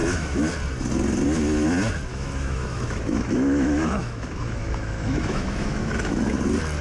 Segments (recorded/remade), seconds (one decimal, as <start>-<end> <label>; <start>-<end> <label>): 0.0-0.5 remade; 0.5-2.1 recorded; 2.1-6.2 remade; 6.2-6.8 recorded